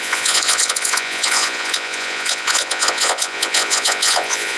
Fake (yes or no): yes